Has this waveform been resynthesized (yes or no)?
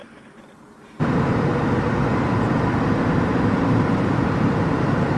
yes